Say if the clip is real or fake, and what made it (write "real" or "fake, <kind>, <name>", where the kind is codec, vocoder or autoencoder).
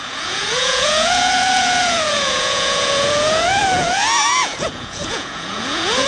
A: fake, vocoder, Vocos